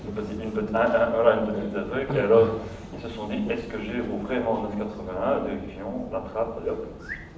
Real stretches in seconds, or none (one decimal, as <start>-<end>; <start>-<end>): 0.0-7.4